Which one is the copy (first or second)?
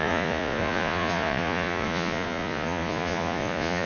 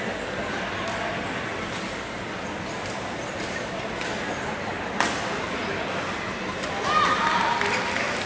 first